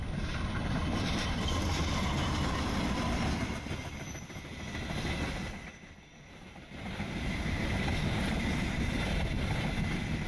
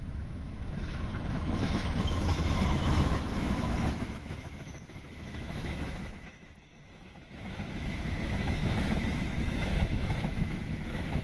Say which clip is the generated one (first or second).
second